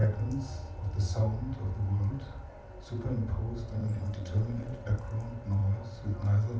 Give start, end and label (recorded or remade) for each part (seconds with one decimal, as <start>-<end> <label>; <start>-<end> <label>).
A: 0.0-3.8 recorded; 3.8-4.9 remade; 4.9-6.6 recorded